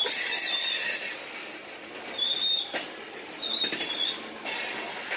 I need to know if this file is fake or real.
real